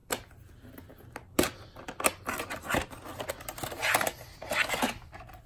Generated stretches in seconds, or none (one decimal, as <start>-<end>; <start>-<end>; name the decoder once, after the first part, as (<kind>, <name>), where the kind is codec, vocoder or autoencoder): none